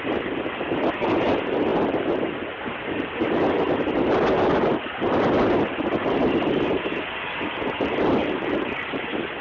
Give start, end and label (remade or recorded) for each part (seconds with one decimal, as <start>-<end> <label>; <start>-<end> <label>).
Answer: 0.0-9.4 recorded